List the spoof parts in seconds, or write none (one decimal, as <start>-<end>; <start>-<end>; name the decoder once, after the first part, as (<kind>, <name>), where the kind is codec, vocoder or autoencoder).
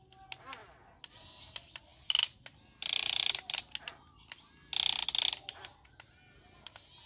none